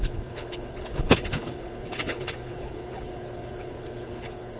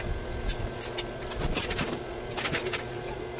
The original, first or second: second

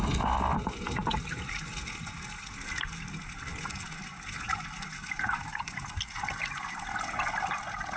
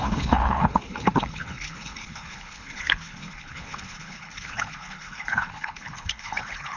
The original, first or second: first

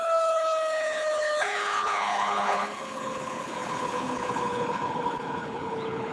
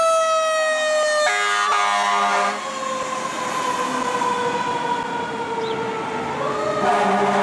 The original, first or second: second